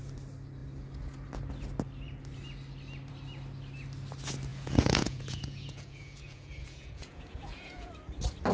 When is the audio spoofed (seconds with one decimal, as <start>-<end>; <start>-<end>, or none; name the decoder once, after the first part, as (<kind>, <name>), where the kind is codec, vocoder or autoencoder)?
4.5-7.9 (vocoder, Vocos)

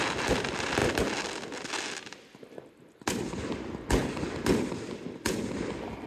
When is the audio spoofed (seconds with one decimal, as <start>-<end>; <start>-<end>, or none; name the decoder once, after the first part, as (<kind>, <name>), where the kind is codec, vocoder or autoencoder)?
none

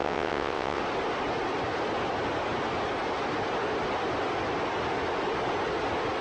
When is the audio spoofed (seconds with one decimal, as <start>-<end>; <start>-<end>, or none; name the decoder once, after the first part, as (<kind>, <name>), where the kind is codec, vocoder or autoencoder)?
0.0-0.8 (vocoder, WaveNeXt)

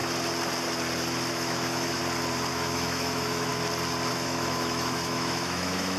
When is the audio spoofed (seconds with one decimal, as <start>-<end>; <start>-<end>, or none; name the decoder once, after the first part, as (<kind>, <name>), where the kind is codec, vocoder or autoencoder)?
1.3-2.0 (autoencoder, DAC-VAE); 2.5-3.5; 4.1-6.0

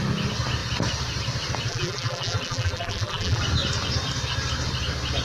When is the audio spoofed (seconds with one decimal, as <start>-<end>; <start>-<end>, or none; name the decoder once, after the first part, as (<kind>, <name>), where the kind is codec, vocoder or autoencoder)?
1.7-3.4 (vocoder, BigVGAN v2)